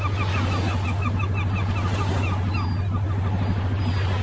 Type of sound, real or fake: real